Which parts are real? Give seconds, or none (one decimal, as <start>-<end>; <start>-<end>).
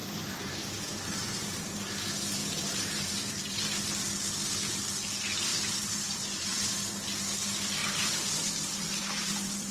1.6-2.4; 3.9-5.5; 6.7-7.8